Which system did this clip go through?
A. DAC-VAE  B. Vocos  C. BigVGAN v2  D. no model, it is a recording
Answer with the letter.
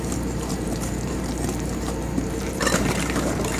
C